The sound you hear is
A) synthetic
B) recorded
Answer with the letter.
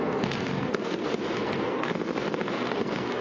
A